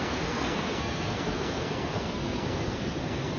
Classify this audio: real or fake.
fake